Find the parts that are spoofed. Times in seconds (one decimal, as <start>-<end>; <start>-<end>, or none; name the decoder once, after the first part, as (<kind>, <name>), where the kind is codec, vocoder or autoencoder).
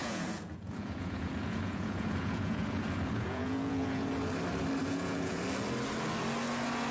0.0-4.1 (vocoder, Vocos); 4.8-5.4